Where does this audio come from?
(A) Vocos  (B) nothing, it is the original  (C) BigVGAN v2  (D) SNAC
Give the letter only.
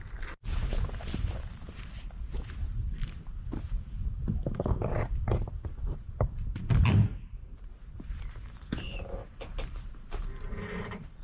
C